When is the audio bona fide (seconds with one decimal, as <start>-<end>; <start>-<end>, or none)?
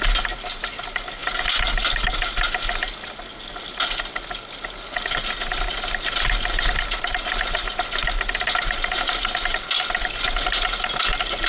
0.0-11.5